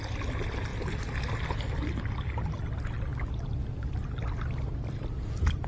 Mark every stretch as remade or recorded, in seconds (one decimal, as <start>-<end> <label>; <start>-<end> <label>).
0.0-5.7 recorded